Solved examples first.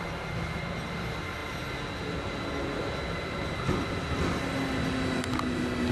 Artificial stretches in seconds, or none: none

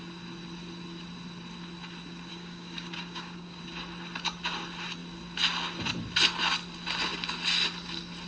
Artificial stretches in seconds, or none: 2.3-3.6

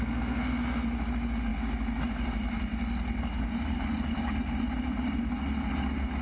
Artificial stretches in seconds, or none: none

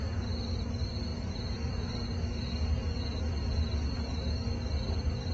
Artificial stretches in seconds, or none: none

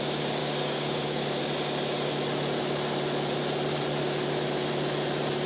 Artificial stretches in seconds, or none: 0.4-1.4

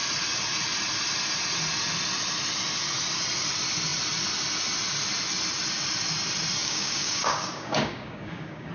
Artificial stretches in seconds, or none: 6.6-8.7

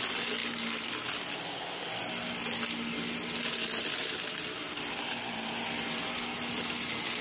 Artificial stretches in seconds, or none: none

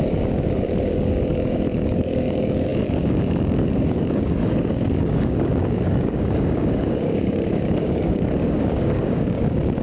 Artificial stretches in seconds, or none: 0.0-9.8